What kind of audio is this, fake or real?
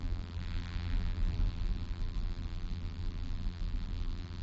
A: fake